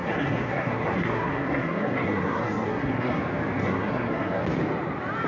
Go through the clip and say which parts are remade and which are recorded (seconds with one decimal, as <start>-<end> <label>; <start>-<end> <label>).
0.0-3.2 remade; 3.2-3.6 recorded; 3.6-4.4 remade; 4.4-5.3 recorded